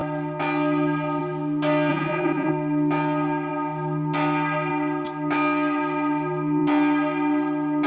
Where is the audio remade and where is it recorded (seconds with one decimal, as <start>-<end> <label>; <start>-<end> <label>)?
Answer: 0.0-1.9 recorded; 1.9-2.5 remade; 2.5-7.9 recorded